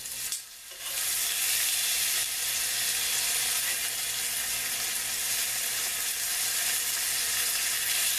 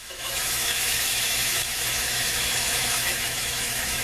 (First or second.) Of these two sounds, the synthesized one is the second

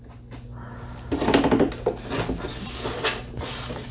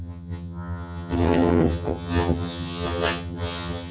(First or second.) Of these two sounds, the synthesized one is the second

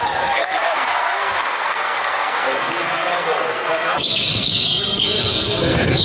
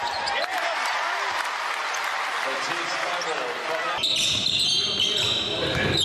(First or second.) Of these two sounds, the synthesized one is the first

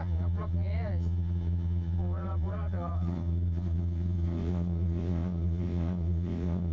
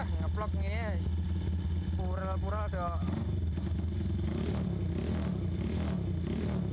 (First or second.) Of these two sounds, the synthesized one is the first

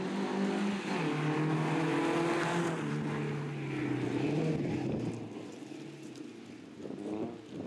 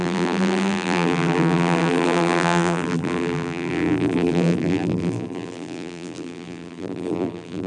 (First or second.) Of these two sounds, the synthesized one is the second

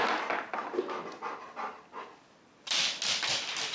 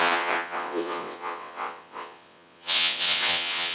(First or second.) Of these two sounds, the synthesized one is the second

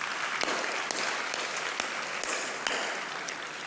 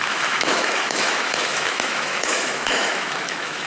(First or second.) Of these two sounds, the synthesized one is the second